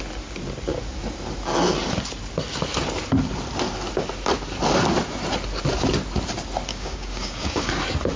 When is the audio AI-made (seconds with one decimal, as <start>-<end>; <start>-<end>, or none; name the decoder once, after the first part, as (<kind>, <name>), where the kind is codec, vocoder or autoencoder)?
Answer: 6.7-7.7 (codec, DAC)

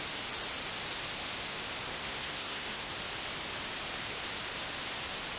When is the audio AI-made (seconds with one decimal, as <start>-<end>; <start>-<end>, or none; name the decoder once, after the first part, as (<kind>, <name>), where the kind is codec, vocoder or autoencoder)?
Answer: 1.9-2.9 (codec, SNAC)

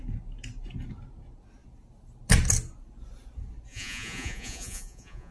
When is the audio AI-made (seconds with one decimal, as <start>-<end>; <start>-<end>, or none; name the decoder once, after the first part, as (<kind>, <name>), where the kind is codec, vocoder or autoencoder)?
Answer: 3.7-5.3 (vocoder, Vocos)